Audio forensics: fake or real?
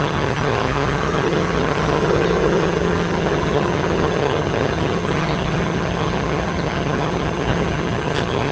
fake